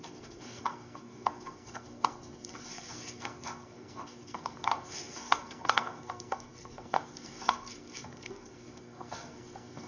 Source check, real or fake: fake